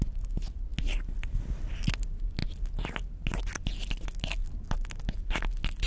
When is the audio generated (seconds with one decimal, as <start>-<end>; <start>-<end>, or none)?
none

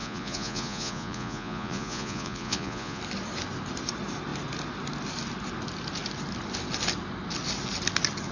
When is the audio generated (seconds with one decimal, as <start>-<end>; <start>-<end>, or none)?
0.0-3.0

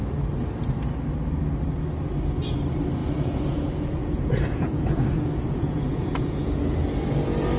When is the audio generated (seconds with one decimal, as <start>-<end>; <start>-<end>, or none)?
3.0-6.6

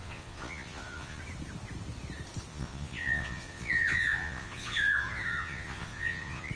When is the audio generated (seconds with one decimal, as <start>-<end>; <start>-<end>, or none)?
0.0-1.2; 2.5-6.5

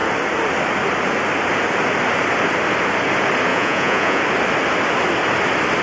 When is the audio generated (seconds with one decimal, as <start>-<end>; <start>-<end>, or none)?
3.5-4.2

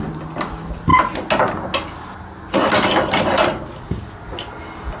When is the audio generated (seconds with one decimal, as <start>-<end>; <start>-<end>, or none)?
none